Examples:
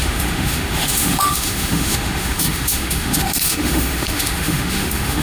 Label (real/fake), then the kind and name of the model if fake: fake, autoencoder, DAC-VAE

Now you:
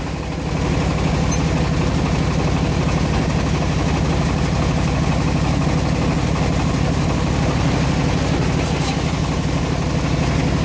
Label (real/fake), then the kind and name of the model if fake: real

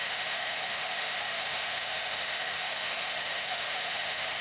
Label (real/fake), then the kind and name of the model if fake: fake, autoencoder, DAC-VAE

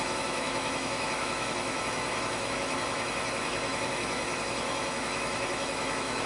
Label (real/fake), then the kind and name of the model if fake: fake, autoencoder, DAC-VAE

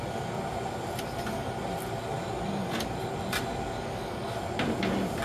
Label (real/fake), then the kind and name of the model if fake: real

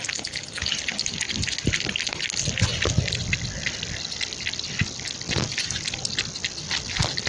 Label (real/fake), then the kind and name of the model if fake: real